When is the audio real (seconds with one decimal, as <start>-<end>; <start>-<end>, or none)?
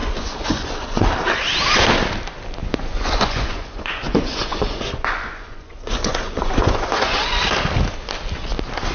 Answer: 1.0-2.6; 7.4-8.9